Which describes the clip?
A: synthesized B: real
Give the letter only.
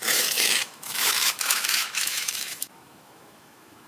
A